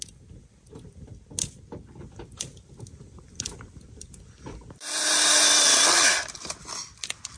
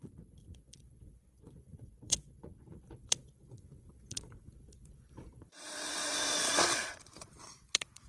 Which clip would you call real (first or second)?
first